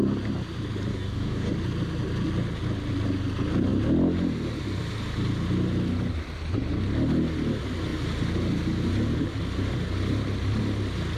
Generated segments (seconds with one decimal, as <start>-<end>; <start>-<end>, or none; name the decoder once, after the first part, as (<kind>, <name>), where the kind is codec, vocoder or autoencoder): 0.9-1.5 (codec, DAC)